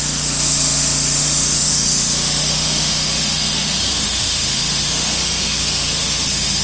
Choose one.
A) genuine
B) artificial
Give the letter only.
B